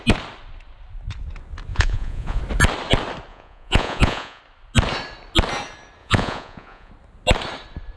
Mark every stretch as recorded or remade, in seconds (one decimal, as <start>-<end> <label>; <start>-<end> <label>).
0.0-1.7 recorded; 1.7-2.4 remade; 2.4-3.3 recorded; 3.3-4.4 remade; 4.4-6.0 recorded; 6.0-6.9 remade; 6.9-8.0 recorded

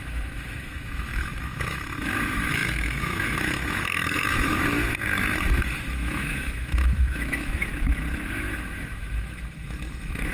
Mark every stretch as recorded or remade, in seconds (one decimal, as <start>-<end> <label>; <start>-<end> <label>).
0.0-7.7 remade; 7.7-8.4 recorded; 8.4-10.3 remade

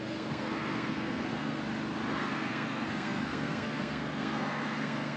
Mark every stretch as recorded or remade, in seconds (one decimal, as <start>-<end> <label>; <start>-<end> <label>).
0.0-1.6 remade; 1.6-2.2 recorded; 2.2-5.2 remade

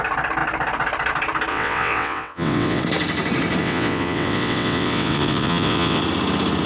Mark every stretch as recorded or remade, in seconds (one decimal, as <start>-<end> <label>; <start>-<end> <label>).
0.0-1.5 recorded; 1.5-2.8 remade; 2.8-3.6 recorded; 3.6-6.0 remade; 6.0-6.7 recorded

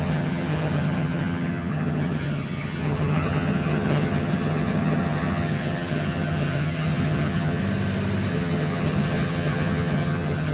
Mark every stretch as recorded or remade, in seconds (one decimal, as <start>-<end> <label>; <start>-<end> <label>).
0.0-7.6 remade; 7.6-8.3 recorded; 8.3-10.5 remade